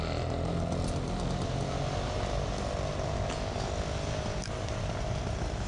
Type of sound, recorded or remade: recorded